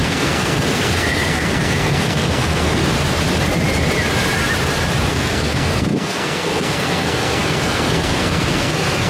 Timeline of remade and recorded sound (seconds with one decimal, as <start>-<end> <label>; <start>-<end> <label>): 0.0-2.8 remade; 2.8-5.1 recorded; 5.1-9.1 remade